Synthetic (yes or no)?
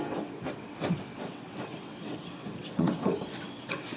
yes